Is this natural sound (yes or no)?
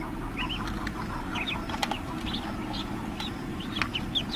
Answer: yes